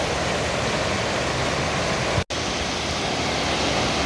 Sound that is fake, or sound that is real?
real